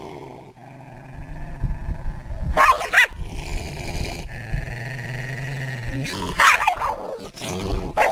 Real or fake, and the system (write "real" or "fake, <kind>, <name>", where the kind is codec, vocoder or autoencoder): real